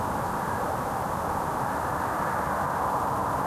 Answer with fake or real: real